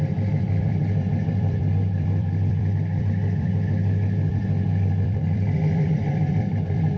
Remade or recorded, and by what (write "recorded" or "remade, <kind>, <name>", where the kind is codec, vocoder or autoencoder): remade, vocoder, BigVGAN v2